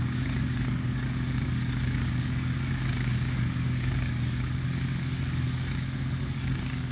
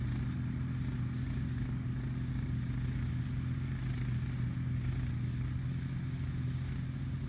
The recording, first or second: second